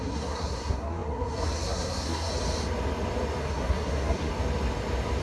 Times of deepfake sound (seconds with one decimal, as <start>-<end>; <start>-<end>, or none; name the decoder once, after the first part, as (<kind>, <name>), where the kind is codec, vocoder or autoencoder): 0.0-2.3 (codec, SNAC); 3.4-4.3

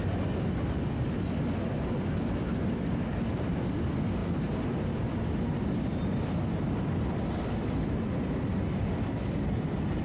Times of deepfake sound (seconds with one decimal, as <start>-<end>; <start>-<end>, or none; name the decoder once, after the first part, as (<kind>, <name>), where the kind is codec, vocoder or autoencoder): none